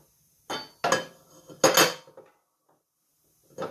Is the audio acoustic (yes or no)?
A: yes